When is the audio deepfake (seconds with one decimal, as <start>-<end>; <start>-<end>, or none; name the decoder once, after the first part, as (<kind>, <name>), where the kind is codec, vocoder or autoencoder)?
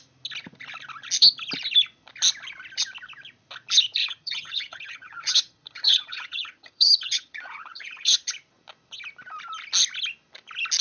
4.0-8.3 (vocoder, HiFi-GAN)